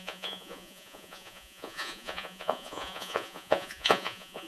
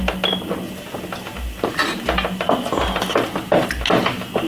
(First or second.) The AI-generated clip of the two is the first